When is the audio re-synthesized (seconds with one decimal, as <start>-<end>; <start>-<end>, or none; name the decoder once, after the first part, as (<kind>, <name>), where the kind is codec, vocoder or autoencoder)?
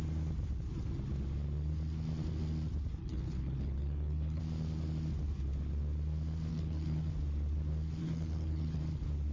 3.0-4.4 (codec, HILCodec); 6.5-7.1; 8.0-8.8